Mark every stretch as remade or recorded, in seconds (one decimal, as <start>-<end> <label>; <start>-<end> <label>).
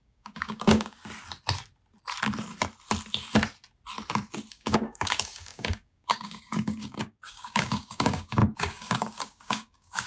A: 0.0-1.0 remade; 1.0-4.5 recorded; 4.5-10.1 remade